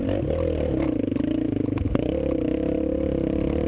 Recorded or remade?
recorded